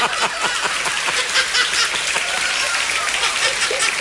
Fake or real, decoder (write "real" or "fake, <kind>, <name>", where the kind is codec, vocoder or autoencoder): real